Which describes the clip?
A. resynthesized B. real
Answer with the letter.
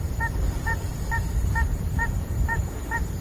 A